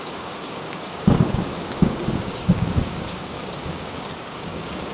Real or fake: fake